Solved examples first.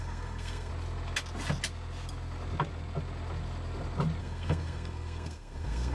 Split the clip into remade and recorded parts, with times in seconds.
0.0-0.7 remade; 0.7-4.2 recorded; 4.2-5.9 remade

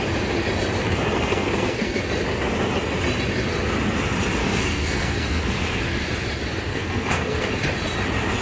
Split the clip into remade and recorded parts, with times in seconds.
0.0-0.8 recorded; 0.8-2.0 remade; 2.0-4.4 recorded; 4.4-5.4 remade; 5.4-6.7 recorded; 6.7-7.5 remade; 7.5-8.4 recorded

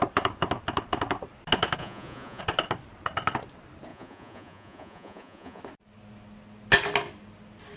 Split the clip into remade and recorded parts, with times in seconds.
0.0-1.8 recorded; 1.8-2.4 remade; 2.4-3.9 recorded; 3.9-5.6 remade; 5.6-7.8 recorded